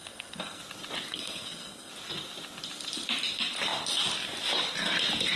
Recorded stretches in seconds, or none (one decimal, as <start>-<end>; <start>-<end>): 0.6-1.1; 1.9-5.4